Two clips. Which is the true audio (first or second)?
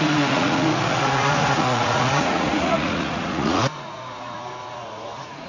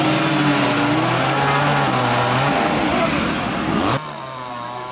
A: second